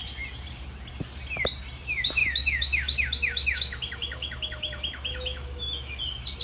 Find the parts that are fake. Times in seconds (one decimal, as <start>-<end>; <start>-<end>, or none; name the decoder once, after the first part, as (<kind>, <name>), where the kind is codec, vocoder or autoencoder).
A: 2.2-6.0 (autoencoder, DAC-VAE)